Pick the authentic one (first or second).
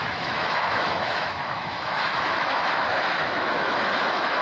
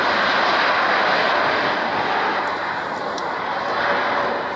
second